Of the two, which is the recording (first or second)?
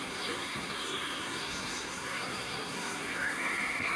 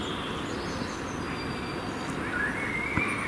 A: second